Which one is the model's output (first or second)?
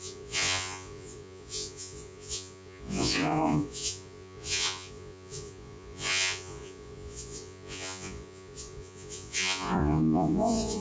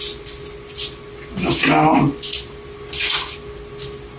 first